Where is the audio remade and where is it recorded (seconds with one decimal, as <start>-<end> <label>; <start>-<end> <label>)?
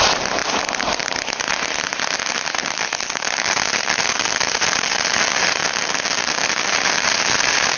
0.0-0.4 remade; 0.4-2.8 recorded; 2.8-5.6 remade; 5.6-6.7 recorded; 6.7-7.8 remade